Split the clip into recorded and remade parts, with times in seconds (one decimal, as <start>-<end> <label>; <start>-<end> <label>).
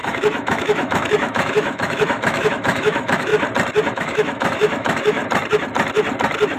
0.0-3.3 remade; 3.3-3.9 recorded; 3.9-5.2 remade; 5.2-6.6 recorded